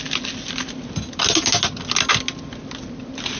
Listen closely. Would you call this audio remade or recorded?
recorded